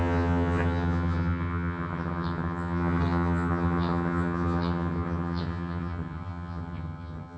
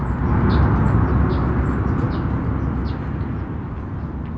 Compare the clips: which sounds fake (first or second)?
first